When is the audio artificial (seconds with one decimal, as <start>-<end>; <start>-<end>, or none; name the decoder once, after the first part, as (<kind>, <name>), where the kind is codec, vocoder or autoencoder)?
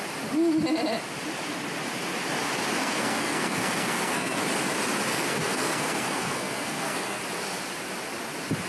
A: 2.7-4.4 (codec, SNAC); 5.1-7.2